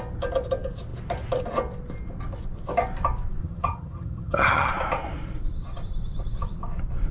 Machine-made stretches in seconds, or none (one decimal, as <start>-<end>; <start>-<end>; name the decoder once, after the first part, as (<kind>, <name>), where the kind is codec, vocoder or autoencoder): 3.4-4.7 (vocoder, HiFi-GAN)